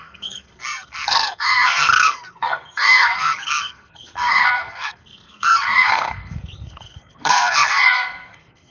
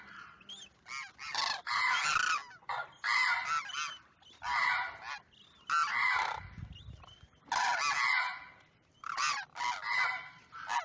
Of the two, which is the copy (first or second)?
first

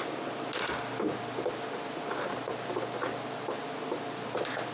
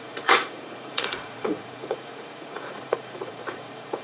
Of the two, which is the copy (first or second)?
second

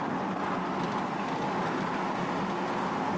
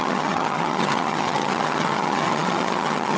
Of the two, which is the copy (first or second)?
second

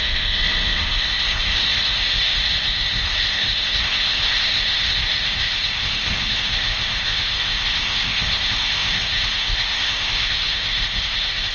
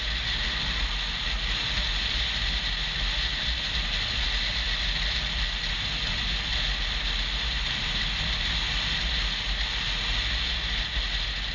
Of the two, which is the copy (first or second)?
first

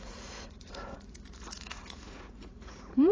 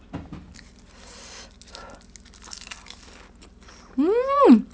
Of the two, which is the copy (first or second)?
first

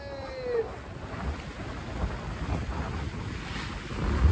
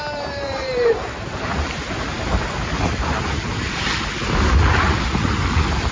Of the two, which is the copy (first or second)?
second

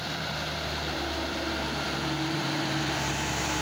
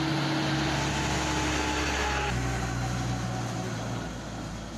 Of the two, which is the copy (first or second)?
first